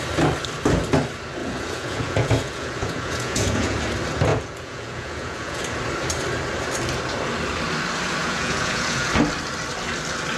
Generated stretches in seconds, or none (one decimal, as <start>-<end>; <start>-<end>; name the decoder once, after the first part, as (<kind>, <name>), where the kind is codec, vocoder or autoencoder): 1.4-3.8 (vocoder, Vocos); 4.3-5.6; 8.2-9.1